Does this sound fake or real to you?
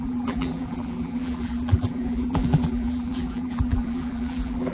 fake